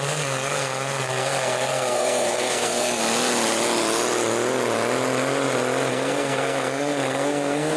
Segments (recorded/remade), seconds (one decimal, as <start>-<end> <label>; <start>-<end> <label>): 0.0-3.0 remade; 3.0-5.9 recorded; 5.9-7.8 remade